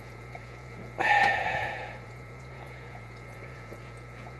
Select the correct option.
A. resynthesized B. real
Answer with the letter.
A